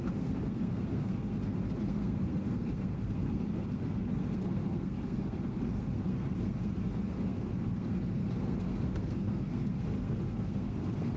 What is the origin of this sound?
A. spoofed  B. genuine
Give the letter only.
A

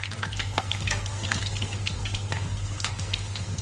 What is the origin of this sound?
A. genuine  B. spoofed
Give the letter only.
B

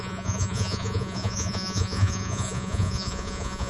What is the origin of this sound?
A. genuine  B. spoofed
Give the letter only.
B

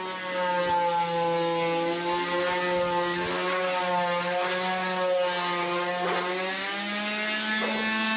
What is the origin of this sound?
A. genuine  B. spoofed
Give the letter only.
A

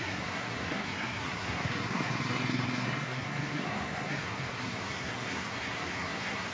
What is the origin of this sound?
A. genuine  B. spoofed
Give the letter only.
B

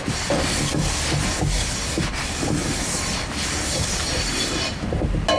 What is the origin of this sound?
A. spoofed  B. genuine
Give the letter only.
B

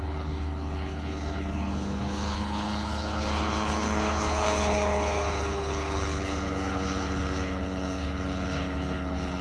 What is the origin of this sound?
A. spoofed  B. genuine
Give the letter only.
A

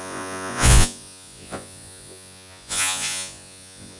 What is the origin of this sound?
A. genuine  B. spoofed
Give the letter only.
B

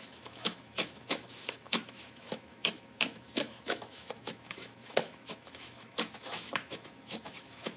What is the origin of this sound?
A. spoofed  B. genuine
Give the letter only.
A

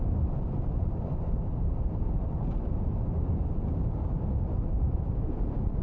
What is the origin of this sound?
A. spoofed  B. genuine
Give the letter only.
B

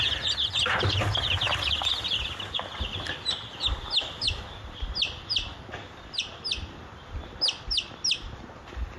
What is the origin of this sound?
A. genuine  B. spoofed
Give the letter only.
A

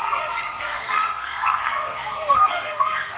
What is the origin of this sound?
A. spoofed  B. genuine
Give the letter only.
A